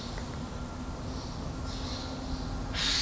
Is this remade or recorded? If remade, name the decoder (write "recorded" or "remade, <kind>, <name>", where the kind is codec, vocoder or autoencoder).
recorded